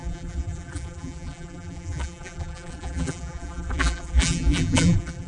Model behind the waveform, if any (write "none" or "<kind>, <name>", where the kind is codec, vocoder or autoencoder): vocoder, BigVGAN v2